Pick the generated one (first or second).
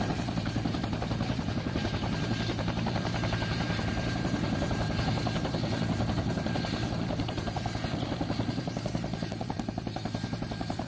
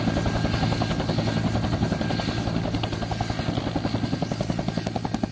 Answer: first